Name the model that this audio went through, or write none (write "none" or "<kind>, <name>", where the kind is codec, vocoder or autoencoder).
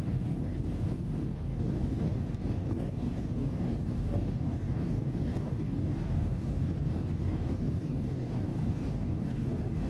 codec, DAC